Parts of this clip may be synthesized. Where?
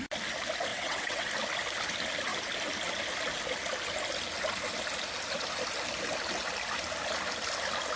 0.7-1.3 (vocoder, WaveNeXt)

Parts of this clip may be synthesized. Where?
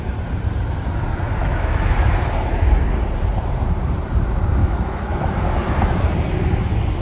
1.4-2.1 (autoencoder, DAC-VAE); 4.6-5.3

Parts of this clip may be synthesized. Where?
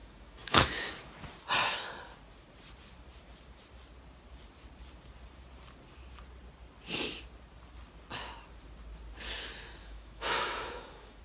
0.0-0.9 (autoencoder, DAC-VAE); 9.8-11.2